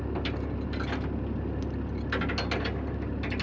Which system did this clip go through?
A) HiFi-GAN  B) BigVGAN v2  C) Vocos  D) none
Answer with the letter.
D